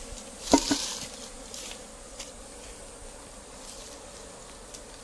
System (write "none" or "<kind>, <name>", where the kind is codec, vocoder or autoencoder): none